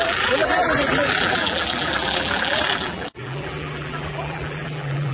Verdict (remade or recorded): remade